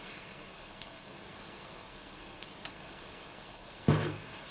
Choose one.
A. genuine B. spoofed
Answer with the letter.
B